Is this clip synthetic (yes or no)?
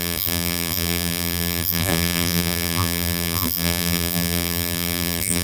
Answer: yes